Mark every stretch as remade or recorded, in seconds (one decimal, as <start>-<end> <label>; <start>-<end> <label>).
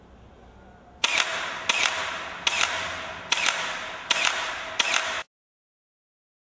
0.0-2.9 recorded; 2.9-4.5 remade; 4.5-6.4 recorded